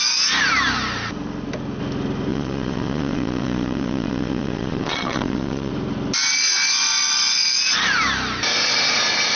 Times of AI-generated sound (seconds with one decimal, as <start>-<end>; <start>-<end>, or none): 2.3-5.7